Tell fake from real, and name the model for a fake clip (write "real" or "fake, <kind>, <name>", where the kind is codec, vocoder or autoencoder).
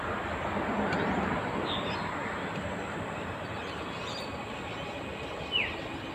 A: real